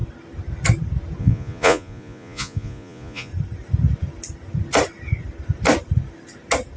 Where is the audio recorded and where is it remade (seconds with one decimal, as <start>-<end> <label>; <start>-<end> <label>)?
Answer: 0.0-1.2 recorded; 1.2-3.3 remade; 3.3-6.8 recorded